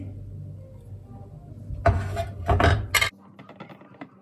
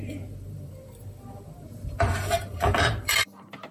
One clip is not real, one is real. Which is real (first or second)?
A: first